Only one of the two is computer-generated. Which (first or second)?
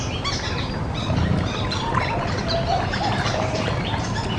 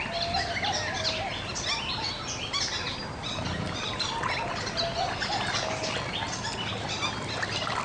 first